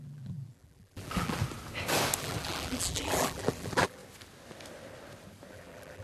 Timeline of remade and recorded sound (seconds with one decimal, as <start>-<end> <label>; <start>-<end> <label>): 0.0-1.4 remade; 1.4-2.2 recorded; 2.2-4.0 remade; 4.0-5.5 recorded; 5.5-6.0 remade